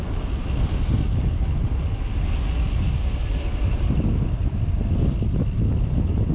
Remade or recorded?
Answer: recorded